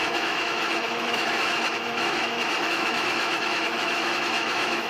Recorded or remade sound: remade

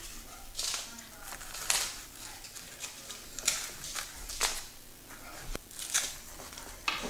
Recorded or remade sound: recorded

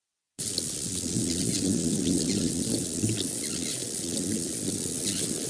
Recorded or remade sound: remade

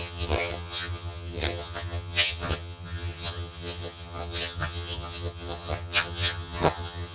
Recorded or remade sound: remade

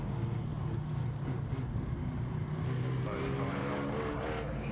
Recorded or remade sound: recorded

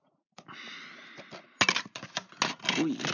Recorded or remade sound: recorded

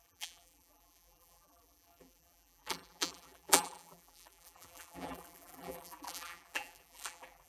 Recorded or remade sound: remade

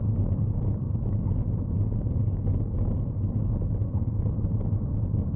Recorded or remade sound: recorded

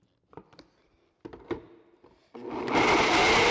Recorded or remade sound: recorded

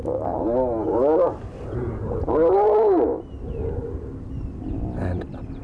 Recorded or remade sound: recorded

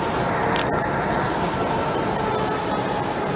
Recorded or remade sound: recorded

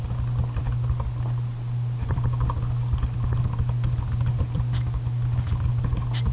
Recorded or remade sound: recorded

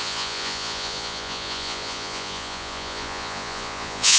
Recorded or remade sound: remade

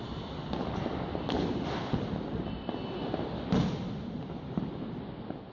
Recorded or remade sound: recorded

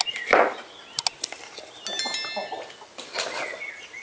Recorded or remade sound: recorded